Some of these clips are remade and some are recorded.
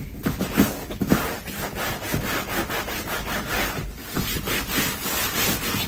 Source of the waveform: recorded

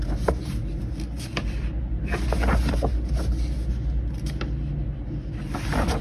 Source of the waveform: recorded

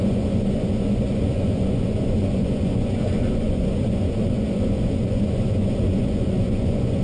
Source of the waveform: remade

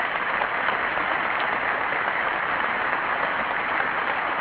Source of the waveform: recorded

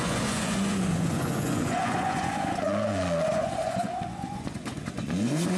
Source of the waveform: remade